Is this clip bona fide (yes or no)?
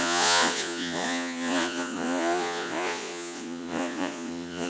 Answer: no